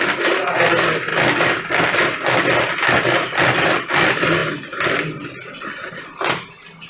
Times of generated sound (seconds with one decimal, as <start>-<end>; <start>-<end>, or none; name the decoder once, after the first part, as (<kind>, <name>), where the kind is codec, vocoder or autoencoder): none